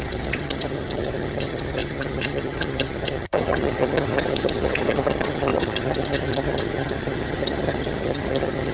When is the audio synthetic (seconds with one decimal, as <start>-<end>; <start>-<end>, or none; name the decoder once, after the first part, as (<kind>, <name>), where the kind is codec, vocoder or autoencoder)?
0.0-8.7 (vocoder, HiFi-GAN)